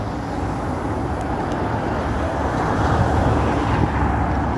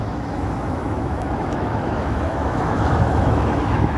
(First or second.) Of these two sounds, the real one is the first